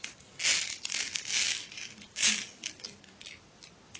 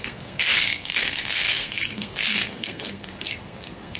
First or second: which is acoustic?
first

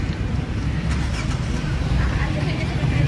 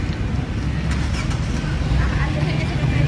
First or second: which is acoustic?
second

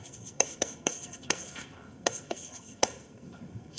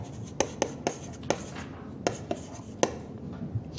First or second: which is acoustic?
second